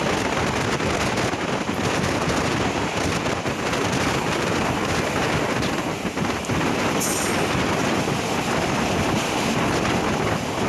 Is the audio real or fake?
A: real